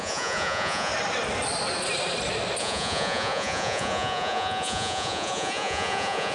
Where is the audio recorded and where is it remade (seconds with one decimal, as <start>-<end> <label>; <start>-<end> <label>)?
0.0-0.9 remade; 0.9-2.6 recorded; 2.6-6.3 remade